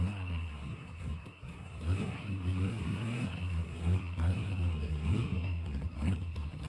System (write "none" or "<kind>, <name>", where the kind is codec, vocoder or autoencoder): codec, SNAC